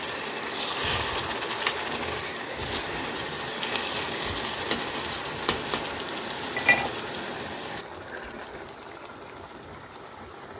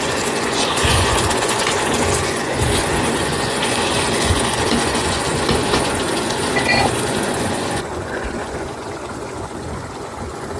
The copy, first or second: second